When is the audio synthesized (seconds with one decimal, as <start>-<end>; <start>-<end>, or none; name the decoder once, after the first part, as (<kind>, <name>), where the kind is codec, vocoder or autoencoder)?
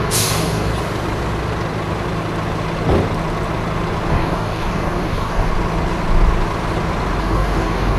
0.0-0.7 (codec, DAC); 4.1-5.5; 7.2-8.0